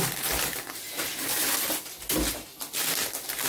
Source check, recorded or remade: recorded